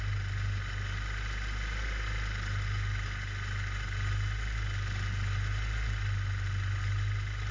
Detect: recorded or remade recorded